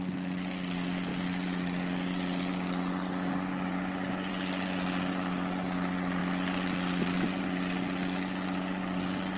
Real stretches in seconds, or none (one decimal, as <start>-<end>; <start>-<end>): 0.0-9.4

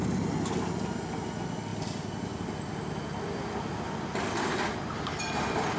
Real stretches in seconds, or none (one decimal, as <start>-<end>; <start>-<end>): 0.0-5.8

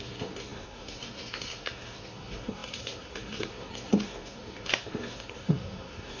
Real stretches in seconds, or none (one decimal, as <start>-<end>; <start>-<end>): none

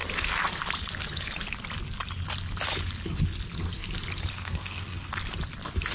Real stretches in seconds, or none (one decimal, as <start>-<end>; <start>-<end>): 0.0-4.3; 5.1-5.9

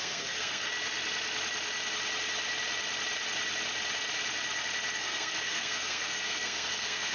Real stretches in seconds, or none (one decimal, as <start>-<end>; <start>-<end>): 0.7-5.0